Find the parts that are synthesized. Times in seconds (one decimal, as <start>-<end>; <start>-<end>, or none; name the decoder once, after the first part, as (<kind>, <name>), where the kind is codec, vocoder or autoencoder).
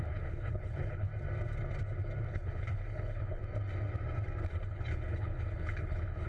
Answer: 0.0-1.1 (codec, HILCodec); 2.3-3.4; 4.5-6.3